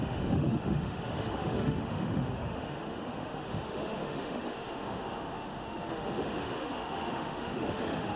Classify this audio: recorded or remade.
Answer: remade